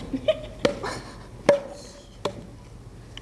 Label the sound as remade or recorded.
recorded